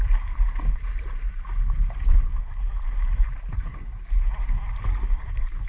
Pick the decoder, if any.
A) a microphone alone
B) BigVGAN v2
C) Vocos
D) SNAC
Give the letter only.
A